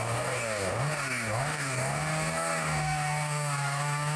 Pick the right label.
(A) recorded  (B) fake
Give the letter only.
B